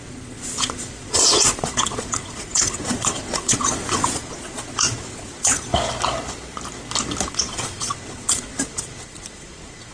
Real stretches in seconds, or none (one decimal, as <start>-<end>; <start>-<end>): 5.7-7.3